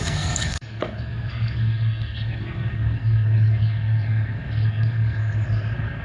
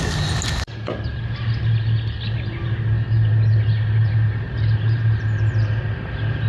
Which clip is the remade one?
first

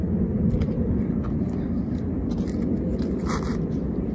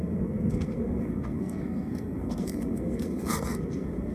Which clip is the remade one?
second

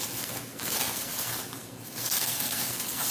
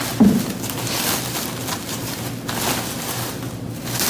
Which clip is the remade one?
first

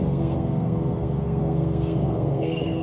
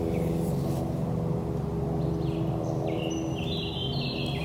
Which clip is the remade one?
first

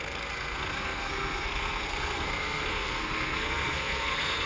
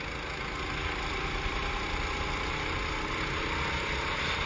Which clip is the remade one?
first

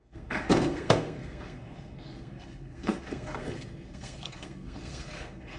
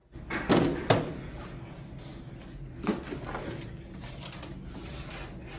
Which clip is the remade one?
first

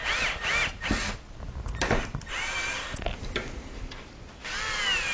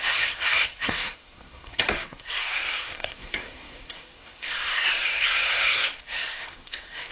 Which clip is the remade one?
second